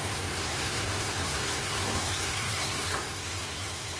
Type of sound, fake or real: fake